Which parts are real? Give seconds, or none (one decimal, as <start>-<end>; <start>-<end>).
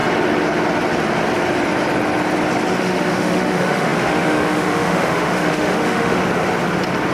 0.0-2.8; 6.2-7.1